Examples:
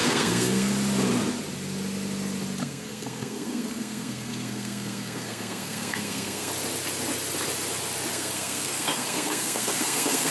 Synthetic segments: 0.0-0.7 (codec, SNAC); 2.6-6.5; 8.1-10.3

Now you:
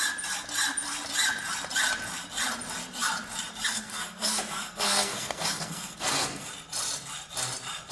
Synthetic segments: 3.7-6.5 (codec, SNAC)

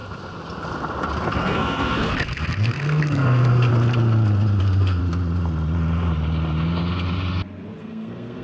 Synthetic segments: 1.4-3.7 (codec, SNAC); 4.6-5.0; 7.8-8.4

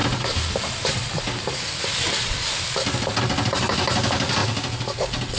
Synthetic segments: none

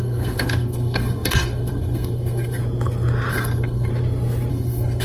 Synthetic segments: 0.0-2.6 (codec, SNAC); 3.3-3.9; 4.5-5.0